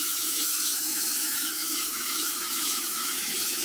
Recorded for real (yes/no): no